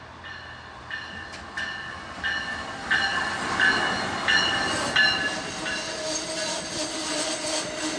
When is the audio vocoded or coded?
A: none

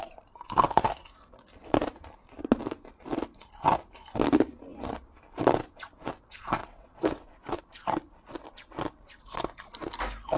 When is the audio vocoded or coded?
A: 6.6-7.6